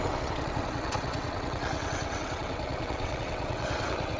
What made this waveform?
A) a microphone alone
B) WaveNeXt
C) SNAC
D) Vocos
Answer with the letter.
B